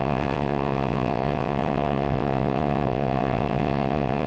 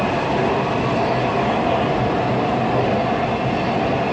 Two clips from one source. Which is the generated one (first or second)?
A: first